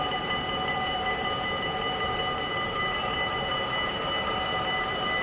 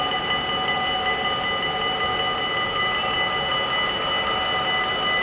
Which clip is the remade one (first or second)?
first